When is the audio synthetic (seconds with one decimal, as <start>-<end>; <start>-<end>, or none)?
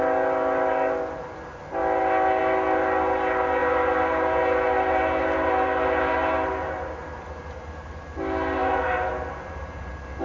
none